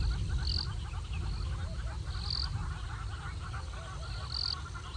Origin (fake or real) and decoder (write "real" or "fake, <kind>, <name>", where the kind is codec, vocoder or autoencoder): real